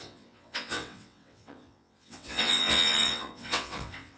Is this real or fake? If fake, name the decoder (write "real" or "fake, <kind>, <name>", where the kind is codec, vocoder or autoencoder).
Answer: fake, vocoder, WaveNeXt